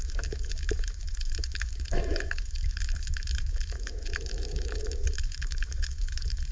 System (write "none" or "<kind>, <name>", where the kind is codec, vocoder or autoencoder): autoencoder, DAC-VAE